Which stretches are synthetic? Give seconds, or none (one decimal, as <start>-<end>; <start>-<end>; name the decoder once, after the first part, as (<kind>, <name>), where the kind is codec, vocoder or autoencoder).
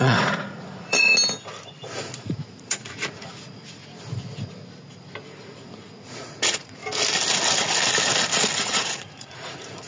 0.0-1.1 (vocoder, Vocos); 2.2-3.8; 5.4-6.8; 8.6-9.9